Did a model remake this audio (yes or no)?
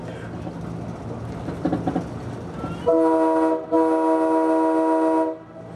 no